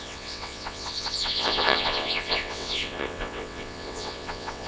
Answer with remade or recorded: remade